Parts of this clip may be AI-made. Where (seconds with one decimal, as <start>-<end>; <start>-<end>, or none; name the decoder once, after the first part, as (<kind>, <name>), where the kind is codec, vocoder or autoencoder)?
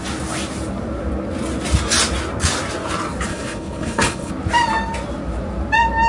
3.3-4.3 (codec, HILCodec)